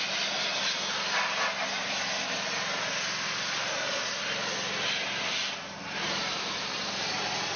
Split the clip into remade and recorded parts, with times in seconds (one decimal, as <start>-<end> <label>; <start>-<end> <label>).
0.0-5.8 recorded; 5.8-7.1 remade; 7.1-7.6 recorded